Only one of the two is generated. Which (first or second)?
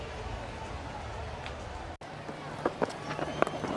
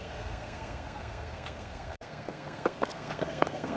second